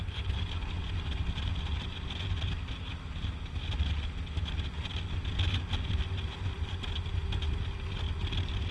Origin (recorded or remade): recorded